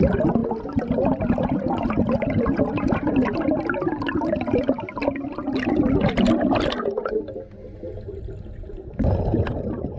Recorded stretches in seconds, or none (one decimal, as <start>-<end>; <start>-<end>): 0.0-10.0